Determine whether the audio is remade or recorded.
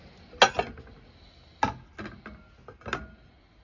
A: recorded